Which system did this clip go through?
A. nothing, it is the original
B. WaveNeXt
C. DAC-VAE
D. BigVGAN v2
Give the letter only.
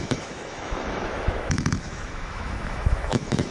C